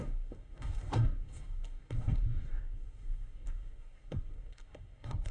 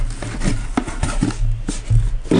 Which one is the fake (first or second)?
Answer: first